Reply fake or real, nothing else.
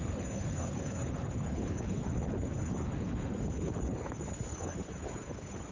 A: fake